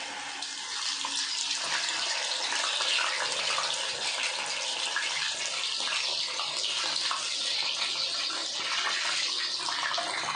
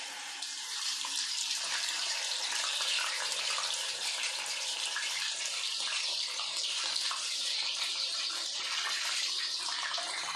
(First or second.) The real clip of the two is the first